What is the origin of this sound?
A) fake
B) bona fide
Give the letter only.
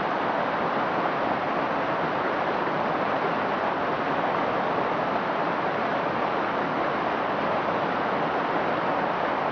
B